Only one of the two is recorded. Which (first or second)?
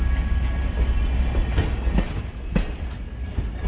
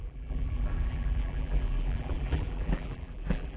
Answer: first